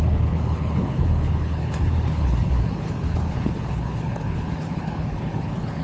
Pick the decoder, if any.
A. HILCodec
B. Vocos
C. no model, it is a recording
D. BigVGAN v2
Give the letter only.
A